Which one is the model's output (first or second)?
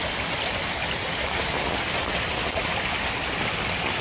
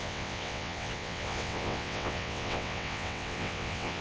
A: second